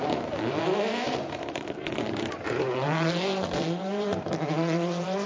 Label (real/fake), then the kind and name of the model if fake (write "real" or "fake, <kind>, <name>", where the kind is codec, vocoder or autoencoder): fake, vocoder, BigVGAN v2